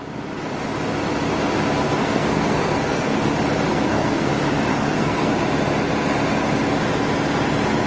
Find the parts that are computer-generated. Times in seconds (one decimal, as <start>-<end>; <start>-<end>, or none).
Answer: 1.8-3.3; 3.7-4.3; 4.7-5.3